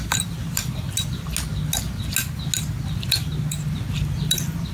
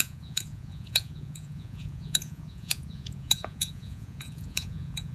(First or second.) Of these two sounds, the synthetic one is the second